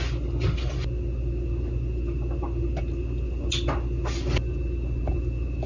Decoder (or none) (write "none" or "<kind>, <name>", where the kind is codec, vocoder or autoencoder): none